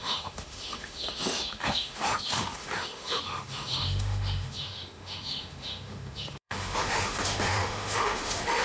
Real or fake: fake